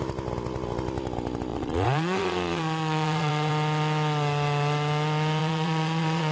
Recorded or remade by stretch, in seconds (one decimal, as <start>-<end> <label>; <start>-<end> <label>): 0.0-1.5 recorded; 1.5-3.5 remade; 3.5-5.4 recorded; 5.4-6.3 remade